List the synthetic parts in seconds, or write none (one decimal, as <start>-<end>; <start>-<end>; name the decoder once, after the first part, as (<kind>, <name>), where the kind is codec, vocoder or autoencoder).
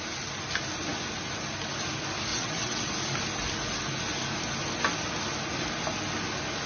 2.3-2.9 (vocoder, WaveNeXt)